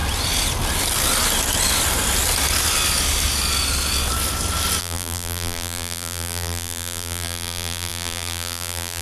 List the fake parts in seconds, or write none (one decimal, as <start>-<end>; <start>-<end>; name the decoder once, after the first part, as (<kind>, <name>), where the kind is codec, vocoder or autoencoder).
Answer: 4.8-9.0 (vocoder, BigVGAN v2)